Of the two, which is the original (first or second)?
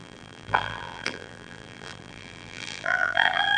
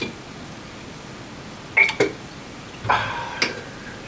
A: second